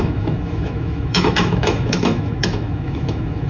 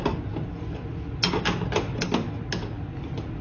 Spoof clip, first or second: first